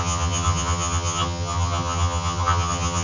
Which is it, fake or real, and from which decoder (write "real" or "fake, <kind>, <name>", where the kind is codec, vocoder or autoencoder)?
fake, vocoder, HiFi-GAN